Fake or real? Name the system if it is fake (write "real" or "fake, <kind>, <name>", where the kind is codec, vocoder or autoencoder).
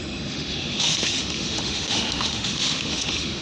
fake, autoencoder, DAC-VAE